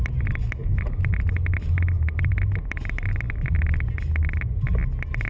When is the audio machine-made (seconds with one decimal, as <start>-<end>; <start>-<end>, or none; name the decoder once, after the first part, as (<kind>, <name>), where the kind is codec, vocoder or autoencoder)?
none